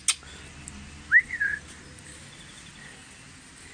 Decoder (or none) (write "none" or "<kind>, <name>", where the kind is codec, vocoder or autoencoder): none